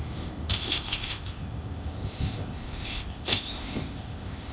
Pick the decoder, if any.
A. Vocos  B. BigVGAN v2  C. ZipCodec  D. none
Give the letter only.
C